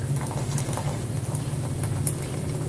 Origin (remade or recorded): recorded